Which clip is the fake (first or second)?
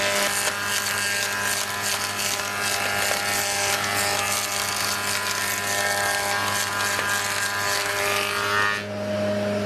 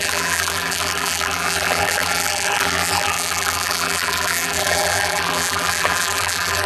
second